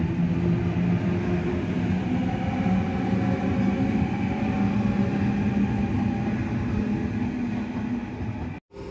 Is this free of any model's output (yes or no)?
yes